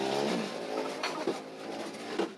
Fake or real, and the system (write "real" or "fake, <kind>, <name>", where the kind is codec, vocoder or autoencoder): real